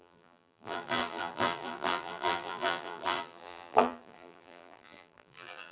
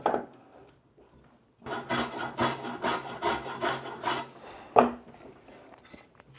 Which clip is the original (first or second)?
second